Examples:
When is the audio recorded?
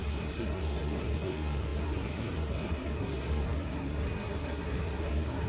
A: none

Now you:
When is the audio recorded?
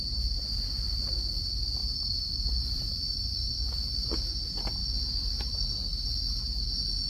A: 0.0-1.8; 3.6-7.1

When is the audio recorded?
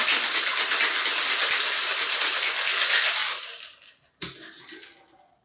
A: 0.0-1.8; 2.4-3.2; 4.1-5.4